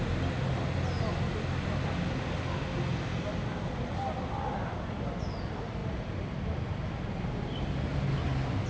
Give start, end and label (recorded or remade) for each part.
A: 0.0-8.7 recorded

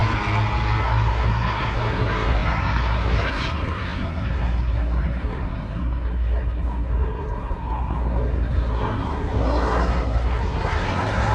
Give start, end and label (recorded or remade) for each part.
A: 0.0-0.8 recorded; 0.8-11.3 remade

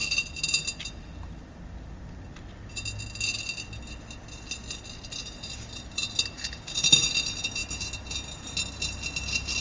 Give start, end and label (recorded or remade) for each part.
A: 0.0-9.6 recorded

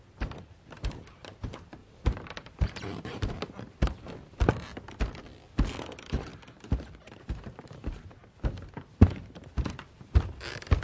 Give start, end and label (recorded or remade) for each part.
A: 0.0-4.7 remade; 4.7-5.8 recorded; 5.8-6.3 remade; 6.3-7.2 recorded; 7.2-8.2 remade; 8.2-8.9 recorded; 8.9-10.8 remade

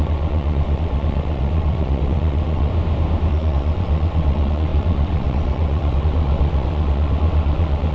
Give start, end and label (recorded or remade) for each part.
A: 0.0-2.7 remade; 2.7-3.3 recorded; 3.3-7.9 remade

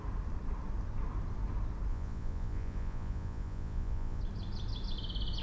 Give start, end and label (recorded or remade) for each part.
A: 0.0-1.9 recorded; 1.9-4.2 remade; 4.2-5.4 recorded

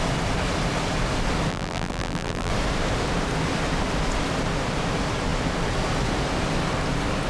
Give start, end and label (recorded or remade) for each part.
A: 0.0-1.5 recorded; 1.5-2.5 remade; 2.5-7.3 recorded